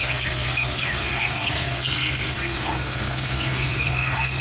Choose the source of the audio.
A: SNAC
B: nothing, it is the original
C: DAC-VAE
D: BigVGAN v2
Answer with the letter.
A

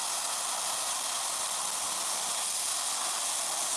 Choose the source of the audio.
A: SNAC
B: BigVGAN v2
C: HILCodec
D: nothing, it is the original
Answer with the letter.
D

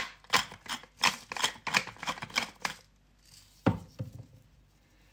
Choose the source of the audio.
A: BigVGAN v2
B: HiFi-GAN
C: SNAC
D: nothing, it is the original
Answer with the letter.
D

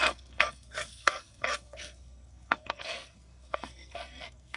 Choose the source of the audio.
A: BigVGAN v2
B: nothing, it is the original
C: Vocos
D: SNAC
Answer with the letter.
D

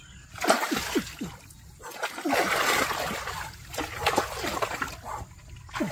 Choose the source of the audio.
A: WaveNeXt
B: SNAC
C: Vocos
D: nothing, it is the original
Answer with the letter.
D